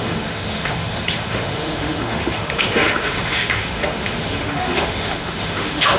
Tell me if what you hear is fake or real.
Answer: fake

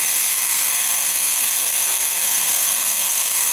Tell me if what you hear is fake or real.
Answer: fake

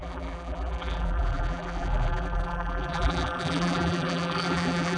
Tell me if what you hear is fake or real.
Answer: fake